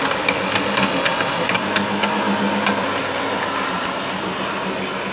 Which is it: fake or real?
real